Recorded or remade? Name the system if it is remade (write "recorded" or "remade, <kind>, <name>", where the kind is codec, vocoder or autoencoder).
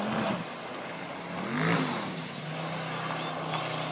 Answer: recorded